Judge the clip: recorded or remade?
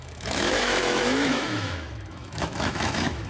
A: remade